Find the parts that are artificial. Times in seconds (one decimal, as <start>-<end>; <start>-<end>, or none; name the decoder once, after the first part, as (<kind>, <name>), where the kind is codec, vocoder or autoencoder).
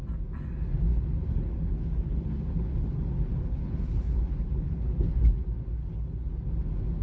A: 0.9-5.1 (codec, HILCodec); 5.8-6.4